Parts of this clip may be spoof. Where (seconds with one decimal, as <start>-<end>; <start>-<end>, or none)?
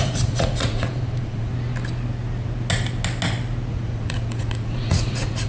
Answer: 0.0-1.5; 3.7-5.5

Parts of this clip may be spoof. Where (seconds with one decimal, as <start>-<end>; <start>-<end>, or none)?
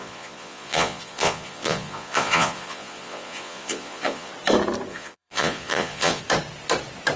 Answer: 0.0-4.3; 4.9-6.2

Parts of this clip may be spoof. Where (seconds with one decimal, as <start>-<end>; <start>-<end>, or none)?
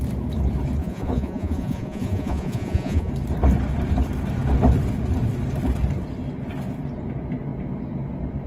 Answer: 0.8-3.1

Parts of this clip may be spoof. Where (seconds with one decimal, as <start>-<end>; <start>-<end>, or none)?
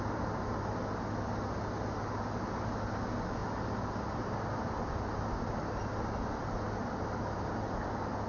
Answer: none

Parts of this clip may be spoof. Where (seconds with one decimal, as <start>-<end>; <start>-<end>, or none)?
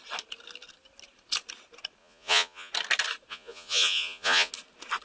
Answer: 2.0-2.7; 3.3-4.5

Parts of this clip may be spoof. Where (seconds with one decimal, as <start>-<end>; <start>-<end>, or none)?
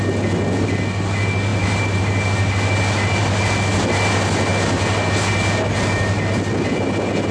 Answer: none